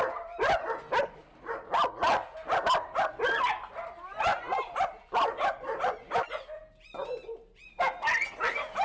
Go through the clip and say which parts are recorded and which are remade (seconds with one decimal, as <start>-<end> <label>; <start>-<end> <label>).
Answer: 0.0-1.2 recorded; 1.2-1.7 remade; 1.7-4.3 recorded; 4.3-6.6 remade; 6.6-8.8 recorded